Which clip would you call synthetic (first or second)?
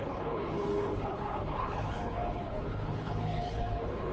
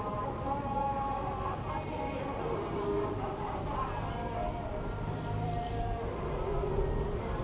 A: first